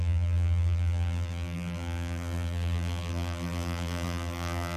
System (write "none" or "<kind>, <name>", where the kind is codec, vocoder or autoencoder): vocoder, BigVGAN v2